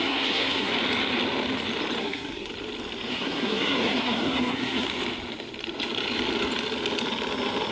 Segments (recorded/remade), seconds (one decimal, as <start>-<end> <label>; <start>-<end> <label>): 0.0-0.7 remade; 0.7-2.0 recorded; 2.0-2.5 remade; 2.5-3.1 recorded; 3.1-4.9 remade; 4.9-7.7 recorded